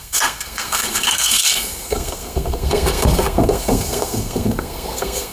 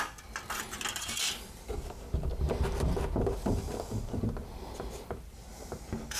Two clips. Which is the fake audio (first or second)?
first